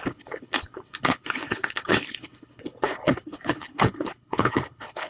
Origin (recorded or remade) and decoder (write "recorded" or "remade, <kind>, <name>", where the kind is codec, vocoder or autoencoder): remade, codec, HILCodec